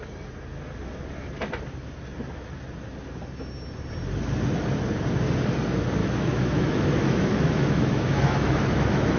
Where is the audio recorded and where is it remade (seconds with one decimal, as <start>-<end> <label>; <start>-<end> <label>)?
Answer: 0.0-6.0 recorded; 6.0-9.2 remade